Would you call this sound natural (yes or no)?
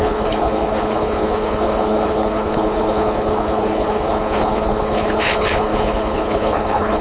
no